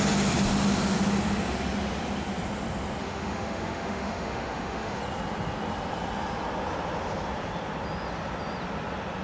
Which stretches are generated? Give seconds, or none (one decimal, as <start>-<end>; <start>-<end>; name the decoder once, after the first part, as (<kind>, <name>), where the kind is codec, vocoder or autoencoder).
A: 3.0-5.0 (autoencoder, DAC-VAE)